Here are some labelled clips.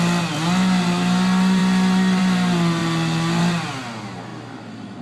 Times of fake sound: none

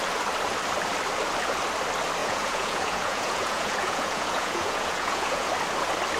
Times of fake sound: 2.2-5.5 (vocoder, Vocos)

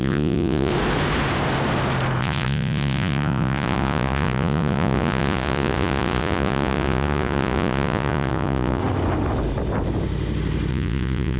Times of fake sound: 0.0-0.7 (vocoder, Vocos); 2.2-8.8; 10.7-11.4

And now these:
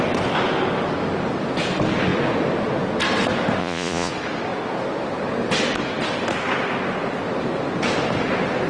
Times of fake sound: 3.6-4.1 (vocoder, Vocos)

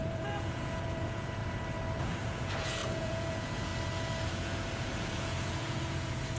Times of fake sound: 0.0-1.4 (vocoder, Vocos); 2.0-3.7; 4.3-6.4

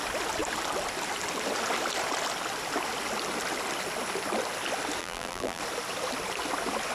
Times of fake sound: 5.0-5.6 (vocoder, BigVGAN v2)